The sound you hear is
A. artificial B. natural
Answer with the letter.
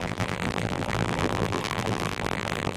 A